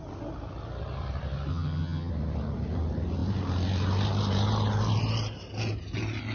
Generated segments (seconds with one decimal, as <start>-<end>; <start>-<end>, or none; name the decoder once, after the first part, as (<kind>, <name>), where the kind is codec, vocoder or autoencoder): 1.5-2.1 (vocoder, HiFi-GAN)